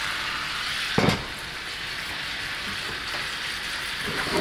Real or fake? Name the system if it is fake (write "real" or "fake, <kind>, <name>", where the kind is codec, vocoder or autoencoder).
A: real